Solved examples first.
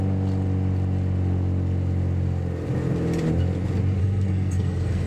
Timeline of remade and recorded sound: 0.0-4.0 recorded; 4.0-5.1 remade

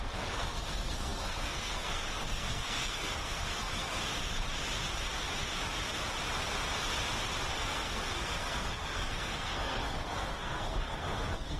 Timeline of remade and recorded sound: 0.0-4.0 remade; 4.0-7.5 recorded; 7.5-11.6 remade